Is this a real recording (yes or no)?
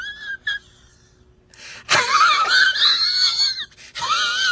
yes